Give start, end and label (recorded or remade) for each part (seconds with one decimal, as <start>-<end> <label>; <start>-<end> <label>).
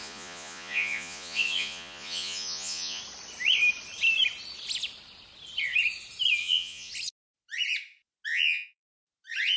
0.0-3.0 remade; 3.0-6.4 recorded; 6.4-6.9 remade; 6.9-8.3 recorded; 8.3-9.0 remade; 9.0-9.6 recorded